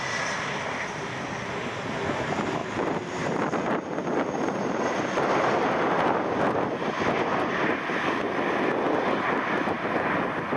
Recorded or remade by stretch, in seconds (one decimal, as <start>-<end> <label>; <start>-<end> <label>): 0.0-2.6 recorded; 2.6-3.4 remade; 3.4-10.6 recorded